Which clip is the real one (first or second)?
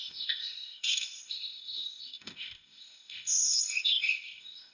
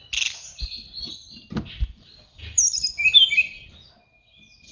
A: second